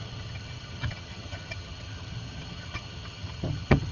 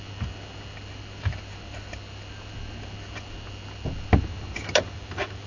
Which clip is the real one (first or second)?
second